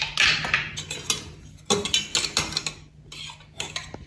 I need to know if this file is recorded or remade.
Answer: recorded